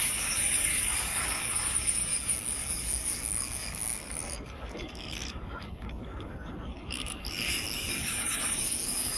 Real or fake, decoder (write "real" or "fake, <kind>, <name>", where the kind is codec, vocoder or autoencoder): fake, codec, DAC